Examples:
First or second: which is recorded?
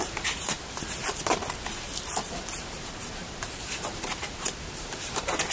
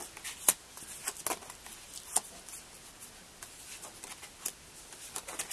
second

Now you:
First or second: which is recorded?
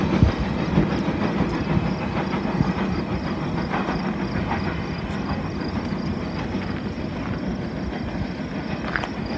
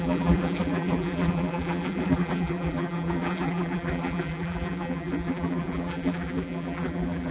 first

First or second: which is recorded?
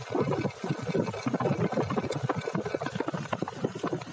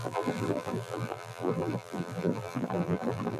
first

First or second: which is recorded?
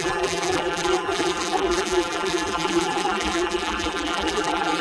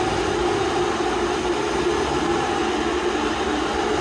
second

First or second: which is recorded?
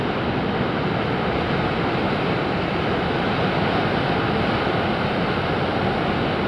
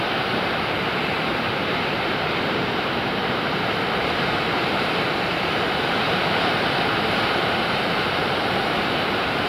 first